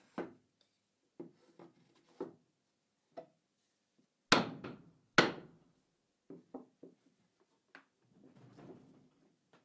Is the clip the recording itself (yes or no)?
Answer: yes